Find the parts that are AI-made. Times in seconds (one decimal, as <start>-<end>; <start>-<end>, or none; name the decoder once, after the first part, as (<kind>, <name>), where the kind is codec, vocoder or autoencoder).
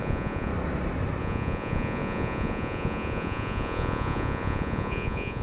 0.0-0.5 (vocoder, Vocos); 1.2-5.4